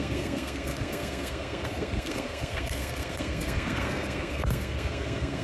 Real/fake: fake